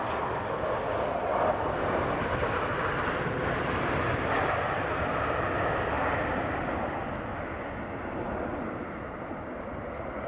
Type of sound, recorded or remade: recorded